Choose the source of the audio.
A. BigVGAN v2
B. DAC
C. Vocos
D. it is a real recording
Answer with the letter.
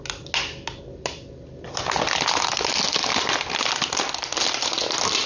D